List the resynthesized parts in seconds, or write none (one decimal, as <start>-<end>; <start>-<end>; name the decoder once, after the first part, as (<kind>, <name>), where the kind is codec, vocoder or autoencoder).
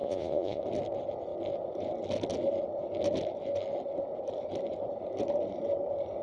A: 0.0-0.6 (vocoder, Vocos)